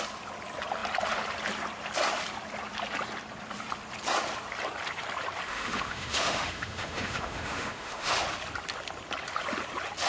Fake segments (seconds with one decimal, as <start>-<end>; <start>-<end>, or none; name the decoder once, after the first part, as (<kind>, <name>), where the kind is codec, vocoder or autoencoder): 5.5-8.1 (autoencoder, DAC-VAE)